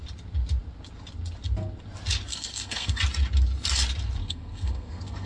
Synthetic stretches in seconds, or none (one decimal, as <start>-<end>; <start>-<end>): 2.3-3.0; 4.2-5.3